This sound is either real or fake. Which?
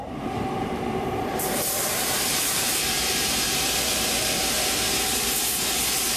fake